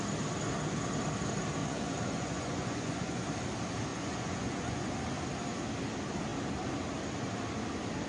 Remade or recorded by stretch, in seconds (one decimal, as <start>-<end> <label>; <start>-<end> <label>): 0.0-1.6 recorded; 1.6-3.2 remade; 3.2-3.9 recorded; 3.9-4.9 remade; 4.9-8.1 recorded